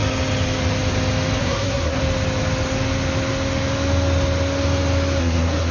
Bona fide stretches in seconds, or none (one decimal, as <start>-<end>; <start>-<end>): 0.0-1.4; 2.0-5.2